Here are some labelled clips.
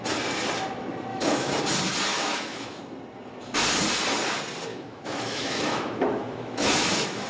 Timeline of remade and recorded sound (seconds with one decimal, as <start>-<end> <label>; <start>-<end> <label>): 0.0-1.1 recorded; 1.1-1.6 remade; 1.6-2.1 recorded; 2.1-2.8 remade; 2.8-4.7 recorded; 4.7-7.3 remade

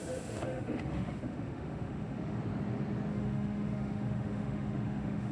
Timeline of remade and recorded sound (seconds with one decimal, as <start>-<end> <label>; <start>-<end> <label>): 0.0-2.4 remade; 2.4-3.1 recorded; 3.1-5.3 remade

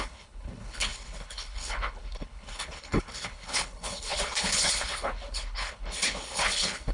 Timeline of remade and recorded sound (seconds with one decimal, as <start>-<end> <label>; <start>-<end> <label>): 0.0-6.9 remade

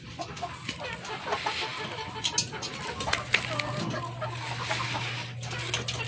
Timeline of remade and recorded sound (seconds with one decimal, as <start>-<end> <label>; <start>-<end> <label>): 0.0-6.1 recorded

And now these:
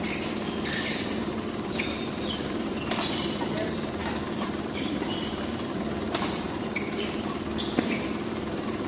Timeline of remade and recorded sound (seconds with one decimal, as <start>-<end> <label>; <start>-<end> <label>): 0.0-8.9 remade

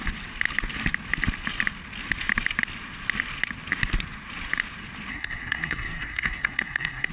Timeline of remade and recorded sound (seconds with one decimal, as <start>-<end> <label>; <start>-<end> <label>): 0.0-5.1 recorded; 5.1-7.1 remade